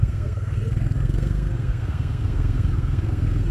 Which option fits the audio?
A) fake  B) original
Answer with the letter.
A